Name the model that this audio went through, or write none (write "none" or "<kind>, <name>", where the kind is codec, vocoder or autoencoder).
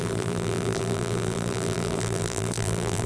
vocoder, BigVGAN v2